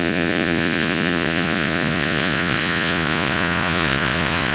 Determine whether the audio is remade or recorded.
remade